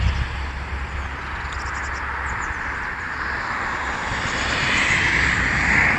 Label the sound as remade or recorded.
remade